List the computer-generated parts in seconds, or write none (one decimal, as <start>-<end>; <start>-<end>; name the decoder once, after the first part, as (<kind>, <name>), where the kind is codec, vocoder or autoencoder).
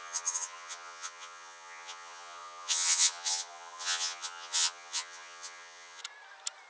0.0-6.0 (vocoder, HiFi-GAN)